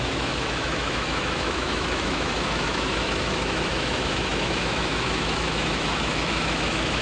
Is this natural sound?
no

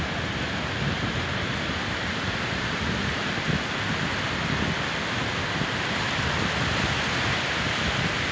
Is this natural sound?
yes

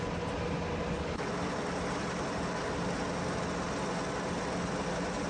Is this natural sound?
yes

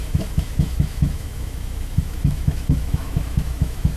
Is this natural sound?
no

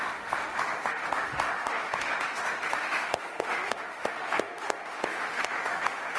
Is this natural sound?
no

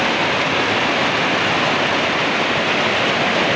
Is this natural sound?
yes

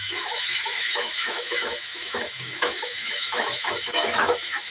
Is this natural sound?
no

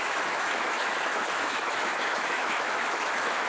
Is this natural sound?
no